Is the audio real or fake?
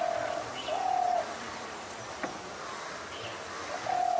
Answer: real